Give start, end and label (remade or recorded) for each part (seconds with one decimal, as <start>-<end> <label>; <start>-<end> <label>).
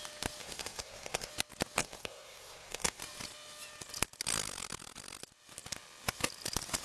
0.0-0.4 recorded; 0.4-1.3 remade; 1.3-1.8 recorded; 1.8-3.0 remade; 3.0-6.8 recorded